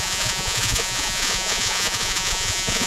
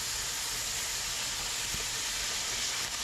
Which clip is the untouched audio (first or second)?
second